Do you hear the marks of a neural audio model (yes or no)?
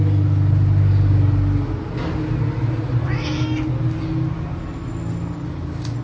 no